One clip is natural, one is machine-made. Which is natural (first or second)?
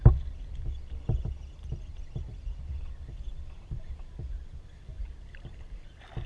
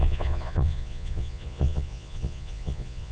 first